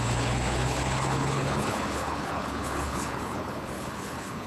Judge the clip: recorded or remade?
remade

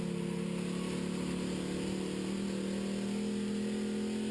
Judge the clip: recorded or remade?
recorded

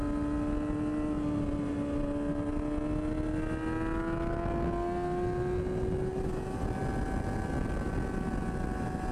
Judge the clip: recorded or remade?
recorded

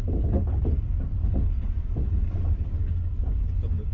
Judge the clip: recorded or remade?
recorded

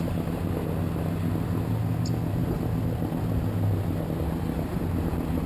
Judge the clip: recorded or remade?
recorded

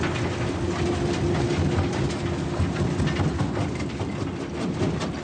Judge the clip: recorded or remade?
recorded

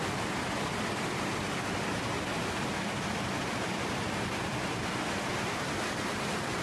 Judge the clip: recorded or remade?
recorded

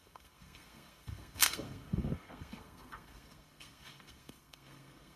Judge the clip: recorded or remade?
remade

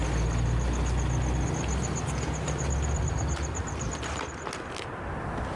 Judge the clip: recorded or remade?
recorded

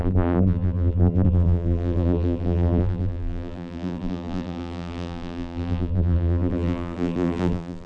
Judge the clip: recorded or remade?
remade